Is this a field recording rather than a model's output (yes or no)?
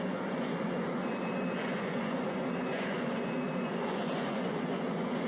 no